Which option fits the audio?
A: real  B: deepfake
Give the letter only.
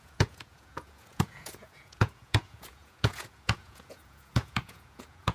B